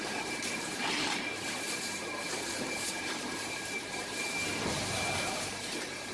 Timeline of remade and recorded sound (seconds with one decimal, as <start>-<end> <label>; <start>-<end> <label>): 0.0-6.1 remade